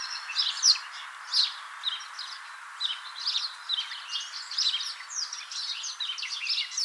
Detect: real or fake real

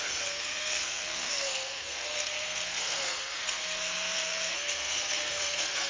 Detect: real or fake fake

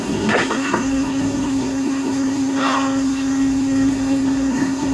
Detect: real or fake fake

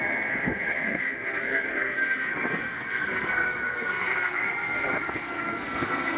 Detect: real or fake fake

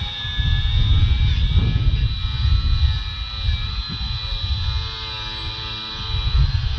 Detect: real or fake real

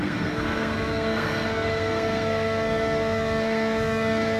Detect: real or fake fake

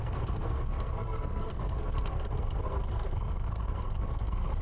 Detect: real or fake fake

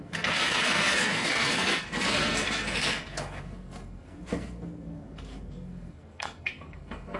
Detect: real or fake fake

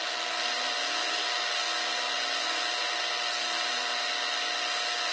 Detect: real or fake real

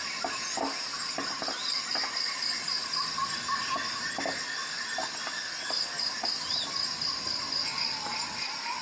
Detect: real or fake real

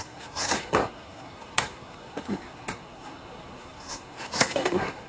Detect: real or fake fake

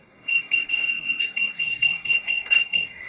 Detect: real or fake fake